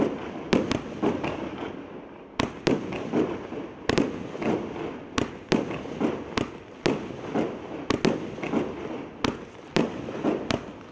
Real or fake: real